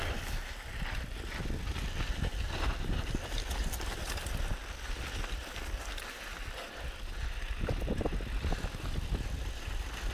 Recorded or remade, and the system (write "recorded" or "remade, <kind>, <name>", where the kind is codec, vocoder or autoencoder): recorded